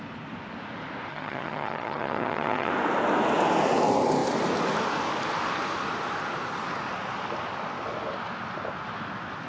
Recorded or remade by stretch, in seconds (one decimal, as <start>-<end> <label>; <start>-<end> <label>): 0.0-1.1 recorded; 1.1-2.7 remade; 2.7-9.5 recorded